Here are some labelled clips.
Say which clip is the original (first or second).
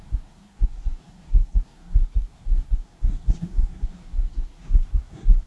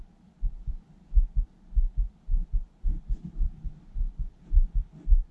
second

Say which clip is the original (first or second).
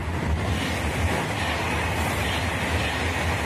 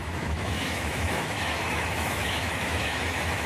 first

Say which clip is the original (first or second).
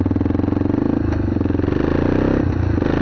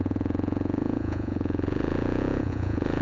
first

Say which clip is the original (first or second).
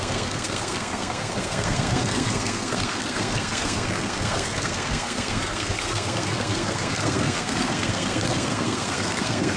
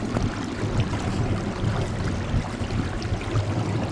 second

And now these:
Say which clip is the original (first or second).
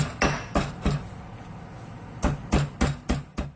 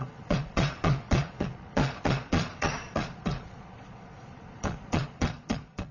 first